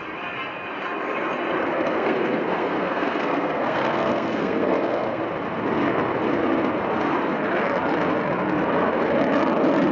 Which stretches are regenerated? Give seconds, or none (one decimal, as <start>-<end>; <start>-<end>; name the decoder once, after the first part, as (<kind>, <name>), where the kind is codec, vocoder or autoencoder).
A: 1.7-5.2 (codec, SNAC)